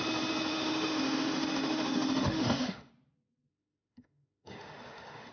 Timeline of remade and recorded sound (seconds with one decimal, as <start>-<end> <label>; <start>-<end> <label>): 0.0-0.5 recorded; 0.5-2.9 remade; 2.9-3.5 recorded; 3.5-5.3 remade